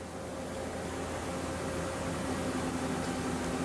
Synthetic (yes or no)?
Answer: no